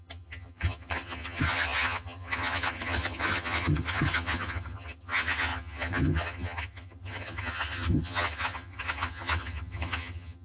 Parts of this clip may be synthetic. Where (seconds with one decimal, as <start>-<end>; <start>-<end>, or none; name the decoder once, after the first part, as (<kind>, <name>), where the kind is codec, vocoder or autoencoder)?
0.0-10.4 (vocoder, HiFi-GAN)